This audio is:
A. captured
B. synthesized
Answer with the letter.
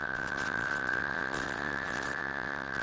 B